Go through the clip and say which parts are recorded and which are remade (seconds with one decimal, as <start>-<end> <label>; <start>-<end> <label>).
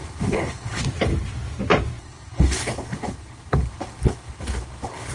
0.0-0.8 remade; 0.8-2.0 recorded; 2.0-5.1 remade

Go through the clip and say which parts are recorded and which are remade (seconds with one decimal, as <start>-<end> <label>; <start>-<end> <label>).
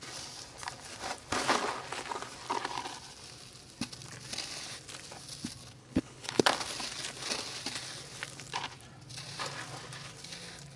0.0-5.8 recorded; 5.8-6.4 remade; 6.4-10.8 recorded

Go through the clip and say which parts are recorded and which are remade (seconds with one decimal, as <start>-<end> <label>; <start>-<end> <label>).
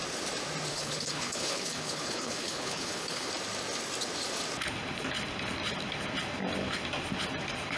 0.0-0.7 recorded; 0.7-3.3 remade; 3.3-7.8 recorded